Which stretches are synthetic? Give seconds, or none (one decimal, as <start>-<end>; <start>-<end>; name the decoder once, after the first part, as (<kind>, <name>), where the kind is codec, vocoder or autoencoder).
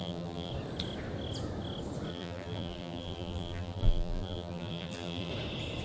0.0-0.5 (vocoder, BigVGAN v2); 2.1-5.3